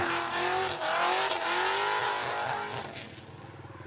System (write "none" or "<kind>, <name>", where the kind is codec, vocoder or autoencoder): none